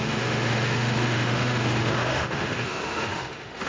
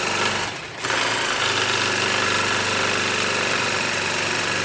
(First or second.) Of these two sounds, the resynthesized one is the first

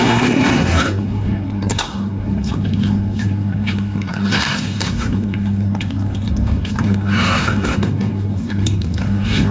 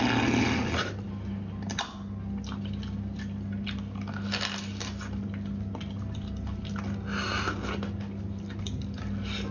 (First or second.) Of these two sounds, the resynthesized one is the first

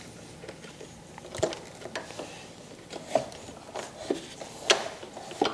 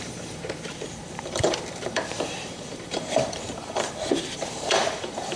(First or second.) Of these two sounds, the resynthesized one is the second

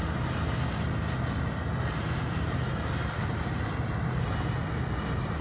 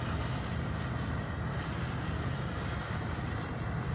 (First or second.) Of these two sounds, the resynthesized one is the second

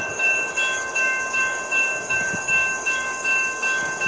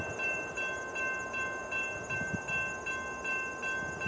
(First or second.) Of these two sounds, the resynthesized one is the first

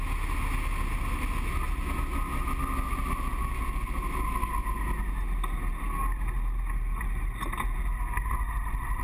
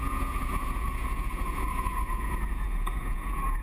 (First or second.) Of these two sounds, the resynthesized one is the second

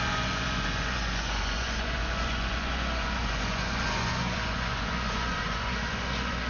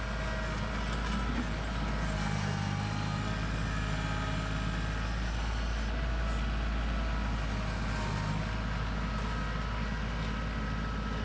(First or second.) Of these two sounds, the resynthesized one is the first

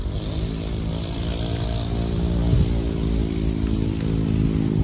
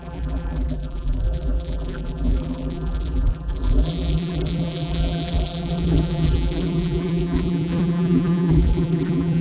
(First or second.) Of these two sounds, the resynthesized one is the second